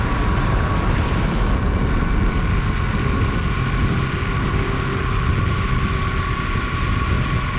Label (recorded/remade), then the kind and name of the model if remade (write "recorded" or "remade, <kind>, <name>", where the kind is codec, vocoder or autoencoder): recorded